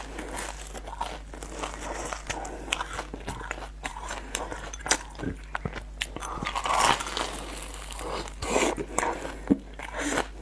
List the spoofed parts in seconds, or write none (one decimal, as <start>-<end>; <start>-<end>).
3.9-4.8